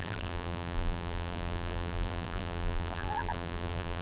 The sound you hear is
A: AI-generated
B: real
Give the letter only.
A